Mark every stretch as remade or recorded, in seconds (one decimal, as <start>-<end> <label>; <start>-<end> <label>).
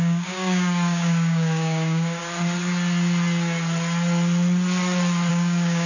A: 0.0-2.2 remade; 2.2-5.3 recorded; 5.3-5.9 remade